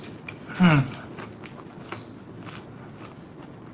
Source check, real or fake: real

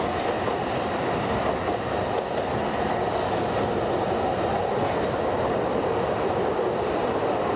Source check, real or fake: real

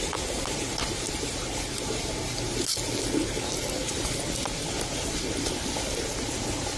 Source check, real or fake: real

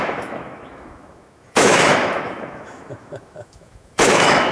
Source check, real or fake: fake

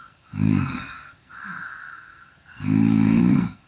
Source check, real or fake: fake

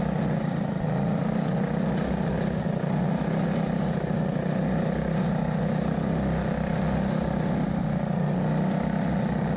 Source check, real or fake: real